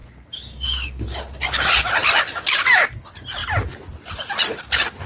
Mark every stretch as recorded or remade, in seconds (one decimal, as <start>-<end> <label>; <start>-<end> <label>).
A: 0.0-1.2 remade; 1.2-5.1 recorded